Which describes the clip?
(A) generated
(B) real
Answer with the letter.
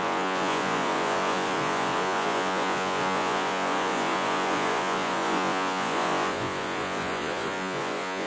A